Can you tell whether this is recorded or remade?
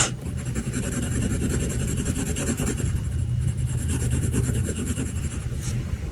remade